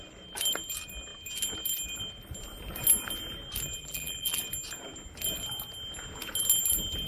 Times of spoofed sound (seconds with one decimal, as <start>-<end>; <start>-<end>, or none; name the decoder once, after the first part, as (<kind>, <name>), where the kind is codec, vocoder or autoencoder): 3.8-4.4 (vocoder, BigVGAN v2)